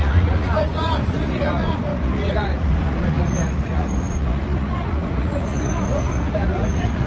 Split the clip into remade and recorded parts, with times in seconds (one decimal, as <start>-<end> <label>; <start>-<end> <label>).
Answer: 0.0-7.1 remade